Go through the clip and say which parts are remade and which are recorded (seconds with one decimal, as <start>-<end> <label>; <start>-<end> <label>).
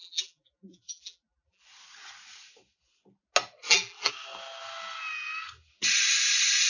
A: 0.0-1.6 remade; 1.6-3.6 recorded; 3.6-4.1 remade; 4.1-6.7 recorded